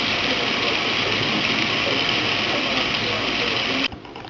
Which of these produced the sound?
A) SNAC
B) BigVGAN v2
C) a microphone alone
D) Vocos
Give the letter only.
B